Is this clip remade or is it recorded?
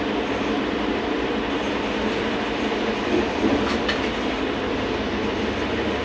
recorded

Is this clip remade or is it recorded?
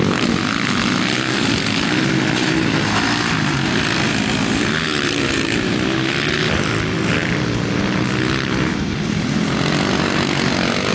recorded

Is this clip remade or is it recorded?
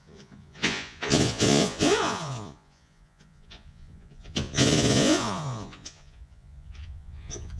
remade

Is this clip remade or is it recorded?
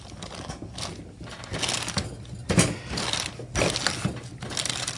recorded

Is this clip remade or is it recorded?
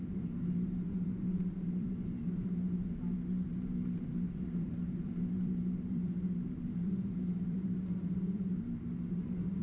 remade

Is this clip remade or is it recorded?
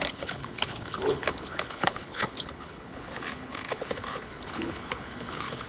remade